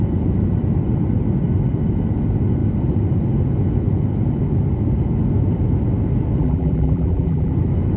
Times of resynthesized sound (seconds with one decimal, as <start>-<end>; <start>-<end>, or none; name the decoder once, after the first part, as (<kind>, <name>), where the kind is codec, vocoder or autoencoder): 6.4-7.5 (vocoder, BigVGAN v2)